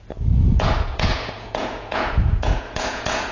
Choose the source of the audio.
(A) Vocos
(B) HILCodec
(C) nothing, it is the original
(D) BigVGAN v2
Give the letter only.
A